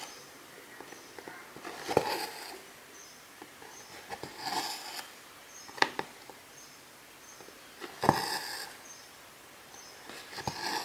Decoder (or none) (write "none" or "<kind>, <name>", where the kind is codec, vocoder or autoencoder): none